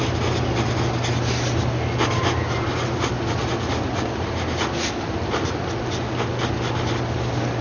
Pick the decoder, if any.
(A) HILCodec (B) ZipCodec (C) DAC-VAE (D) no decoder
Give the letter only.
D